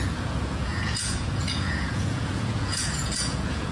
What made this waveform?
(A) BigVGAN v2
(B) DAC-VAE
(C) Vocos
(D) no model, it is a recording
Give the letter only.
C